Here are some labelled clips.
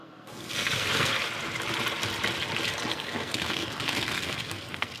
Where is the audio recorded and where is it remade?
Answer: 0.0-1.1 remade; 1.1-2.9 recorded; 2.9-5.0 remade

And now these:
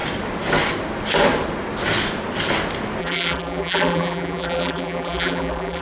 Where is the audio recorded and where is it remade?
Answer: 0.0-3.0 recorded; 3.0-5.8 remade

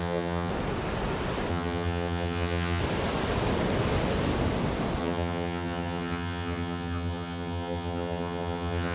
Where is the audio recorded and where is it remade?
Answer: 0.0-0.5 remade; 0.5-1.5 recorded; 1.5-2.8 remade; 2.8-5.0 recorded; 5.0-8.9 remade

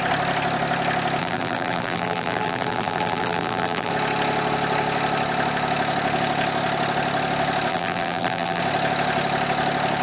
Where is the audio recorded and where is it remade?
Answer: 0.0-1.2 recorded; 1.2-3.9 remade; 3.9-7.7 recorded; 7.7-8.6 remade; 8.6-10.0 recorded

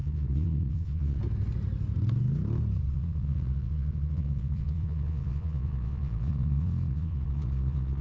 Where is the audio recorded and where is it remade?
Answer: 0.0-1.2 remade; 1.2-2.9 recorded; 2.9-8.0 remade